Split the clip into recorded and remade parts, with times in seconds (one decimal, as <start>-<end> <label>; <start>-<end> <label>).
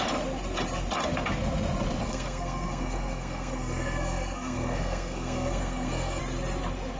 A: 0.0-2.0 recorded; 2.0-6.2 remade; 6.2-7.0 recorded